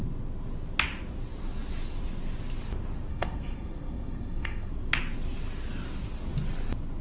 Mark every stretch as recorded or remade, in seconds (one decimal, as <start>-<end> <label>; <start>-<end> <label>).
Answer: 0.0-3.1 recorded; 3.1-4.7 remade; 4.7-7.0 recorded